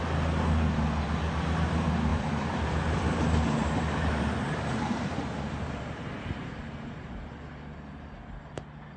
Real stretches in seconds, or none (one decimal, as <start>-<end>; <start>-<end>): 0.0-2.1; 7.1-9.0